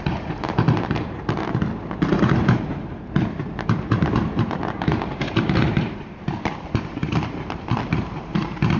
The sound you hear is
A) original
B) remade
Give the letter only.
B